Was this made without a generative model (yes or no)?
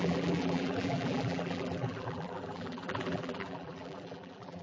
no